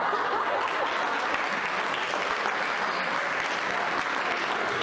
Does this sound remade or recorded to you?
recorded